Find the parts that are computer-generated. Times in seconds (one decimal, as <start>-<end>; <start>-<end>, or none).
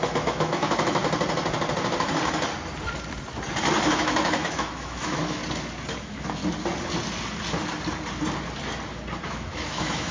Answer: 0.0-1.0; 3.9-5.4; 6.0-6.4; 9.2-10.1